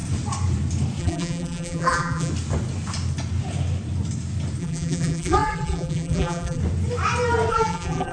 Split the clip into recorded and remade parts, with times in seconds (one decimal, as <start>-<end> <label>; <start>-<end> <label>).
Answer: 0.0-1.0 recorded; 1.0-2.3 remade; 2.3-4.6 recorded; 4.6-6.6 remade; 6.6-7.5 recorded; 7.5-8.1 remade